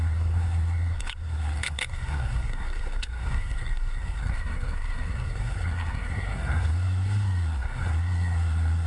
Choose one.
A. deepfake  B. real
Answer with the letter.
A